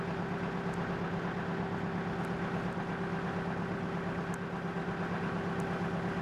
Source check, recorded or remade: recorded